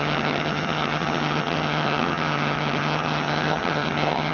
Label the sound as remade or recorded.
remade